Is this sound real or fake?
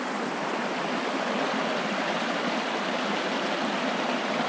real